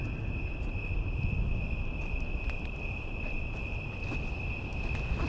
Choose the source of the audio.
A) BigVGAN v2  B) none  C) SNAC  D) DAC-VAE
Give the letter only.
B